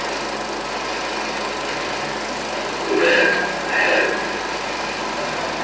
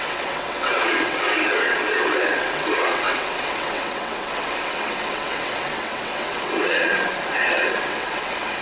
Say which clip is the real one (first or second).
first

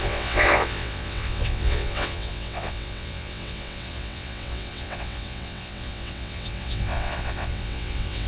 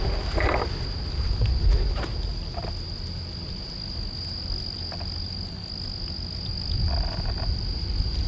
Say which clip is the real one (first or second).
second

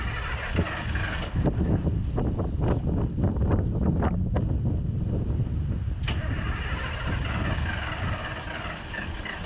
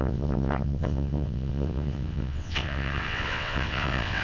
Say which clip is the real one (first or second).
first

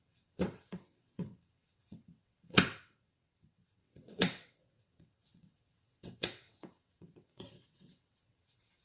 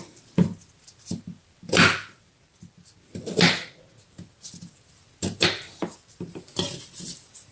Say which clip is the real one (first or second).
second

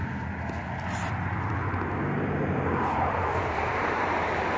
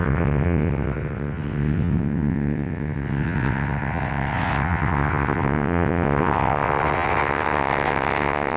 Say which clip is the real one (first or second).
first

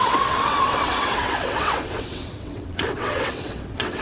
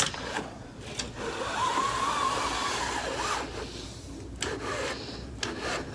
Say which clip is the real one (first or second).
second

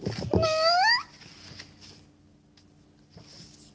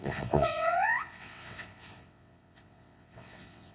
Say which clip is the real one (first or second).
first